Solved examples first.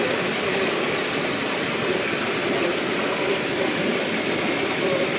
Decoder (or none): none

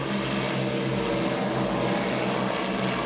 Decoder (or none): none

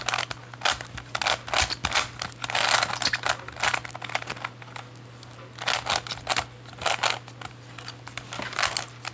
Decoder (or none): none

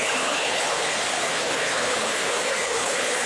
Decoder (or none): codec, HILCodec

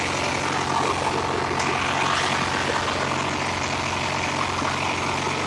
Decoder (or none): none